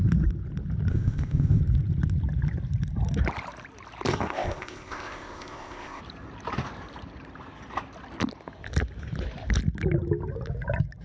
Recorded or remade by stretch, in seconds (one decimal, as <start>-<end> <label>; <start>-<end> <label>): 0.0-0.9 recorded; 0.9-1.6 remade; 1.6-4.1 recorded; 4.1-6.0 remade; 6.0-11.0 recorded